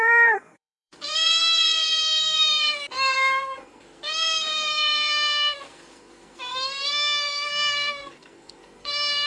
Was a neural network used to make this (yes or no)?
yes